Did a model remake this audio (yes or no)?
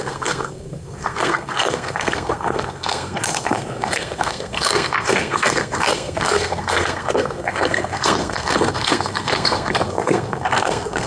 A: yes